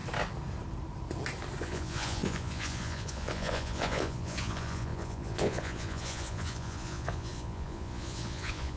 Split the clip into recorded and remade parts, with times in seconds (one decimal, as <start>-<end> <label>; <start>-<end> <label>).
0.0-1.6 recorded; 1.6-8.8 remade